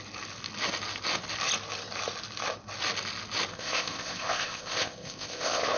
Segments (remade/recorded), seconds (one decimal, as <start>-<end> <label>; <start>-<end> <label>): 0.0-3.5 recorded; 3.5-5.8 remade